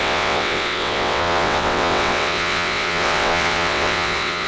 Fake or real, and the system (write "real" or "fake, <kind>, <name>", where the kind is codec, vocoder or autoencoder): fake, vocoder, WaveNeXt